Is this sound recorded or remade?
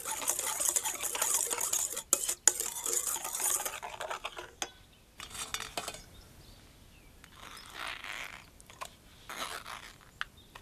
recorded